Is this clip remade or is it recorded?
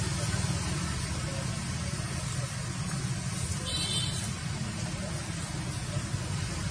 recorded